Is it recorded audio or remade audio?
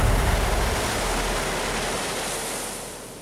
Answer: recorded